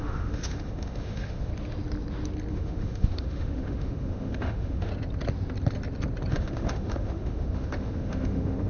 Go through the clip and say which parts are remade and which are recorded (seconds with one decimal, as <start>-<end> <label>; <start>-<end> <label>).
0.0-1.5 remade; 1.5-2.5 recorded; 2.5-4.9 remade; 4.9-6.3 recorded; 6.3-8.7 remade